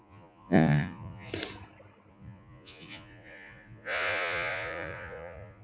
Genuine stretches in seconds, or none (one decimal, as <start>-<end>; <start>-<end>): 1.3-2.1